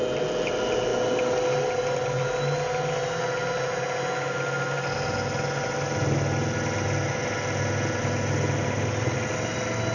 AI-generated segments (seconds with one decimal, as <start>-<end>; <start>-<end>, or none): none

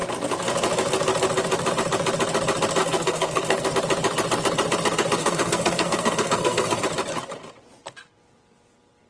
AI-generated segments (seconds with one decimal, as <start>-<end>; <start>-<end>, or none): 2.8-3.7; 5.2-6.8